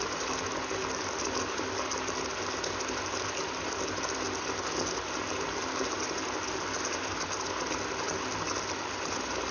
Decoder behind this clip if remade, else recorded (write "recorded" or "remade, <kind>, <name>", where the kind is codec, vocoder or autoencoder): recorded